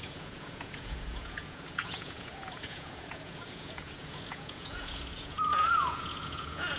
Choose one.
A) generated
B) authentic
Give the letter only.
A